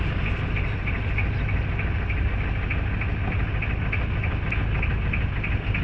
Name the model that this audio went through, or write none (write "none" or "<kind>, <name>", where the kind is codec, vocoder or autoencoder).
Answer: none